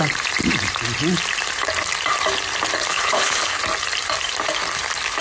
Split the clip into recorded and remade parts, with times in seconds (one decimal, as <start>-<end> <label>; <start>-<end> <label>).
0.0-2.9 recorded; 2.9-3.6 remade; 3.6-5.2 recorded